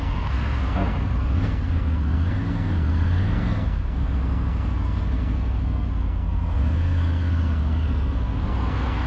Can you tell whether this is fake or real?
fake